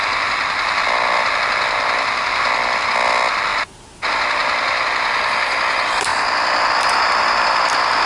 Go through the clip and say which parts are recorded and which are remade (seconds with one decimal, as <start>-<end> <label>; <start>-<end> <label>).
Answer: 0.0-8.1 recorded